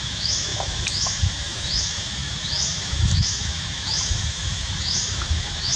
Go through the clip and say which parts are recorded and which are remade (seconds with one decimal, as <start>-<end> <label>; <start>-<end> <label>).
0.0-5.8 remade